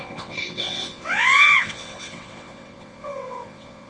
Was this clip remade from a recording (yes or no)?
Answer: yes